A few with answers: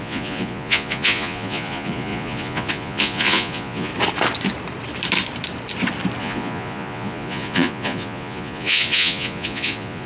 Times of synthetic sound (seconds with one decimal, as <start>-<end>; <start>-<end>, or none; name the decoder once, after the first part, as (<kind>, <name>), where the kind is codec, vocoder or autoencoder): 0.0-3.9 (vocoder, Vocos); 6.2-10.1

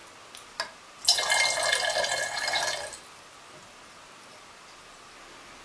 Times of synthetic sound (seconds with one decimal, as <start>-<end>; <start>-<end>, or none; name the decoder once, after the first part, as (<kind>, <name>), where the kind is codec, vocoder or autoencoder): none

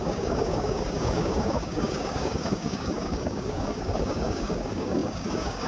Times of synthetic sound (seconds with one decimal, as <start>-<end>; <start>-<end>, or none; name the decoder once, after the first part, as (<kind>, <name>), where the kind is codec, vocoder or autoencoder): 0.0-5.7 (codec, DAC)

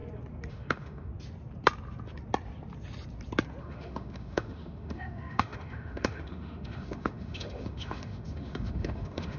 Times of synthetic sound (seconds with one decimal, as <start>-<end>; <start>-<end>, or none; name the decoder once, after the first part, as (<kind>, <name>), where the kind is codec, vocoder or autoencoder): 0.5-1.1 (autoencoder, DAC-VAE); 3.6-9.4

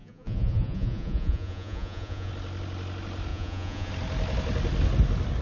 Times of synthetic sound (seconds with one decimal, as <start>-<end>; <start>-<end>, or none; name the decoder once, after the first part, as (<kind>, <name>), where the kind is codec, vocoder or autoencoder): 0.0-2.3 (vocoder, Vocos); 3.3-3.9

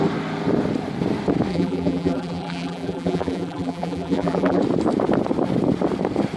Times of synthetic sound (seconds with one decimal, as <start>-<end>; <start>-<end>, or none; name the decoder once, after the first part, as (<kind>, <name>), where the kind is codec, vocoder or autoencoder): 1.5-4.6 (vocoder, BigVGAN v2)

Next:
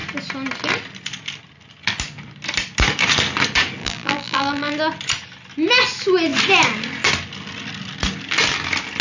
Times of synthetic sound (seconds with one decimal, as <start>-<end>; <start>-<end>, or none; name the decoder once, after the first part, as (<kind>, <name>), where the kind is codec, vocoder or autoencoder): 3.8-4.7 (vocoder, BigVGAN v2)

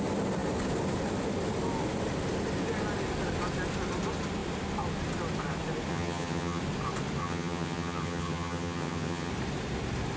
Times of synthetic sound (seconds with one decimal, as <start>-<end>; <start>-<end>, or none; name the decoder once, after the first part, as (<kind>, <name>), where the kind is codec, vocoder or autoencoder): 5.9-6.6 (vocoder, HiFi-GAN); 7.2-9.3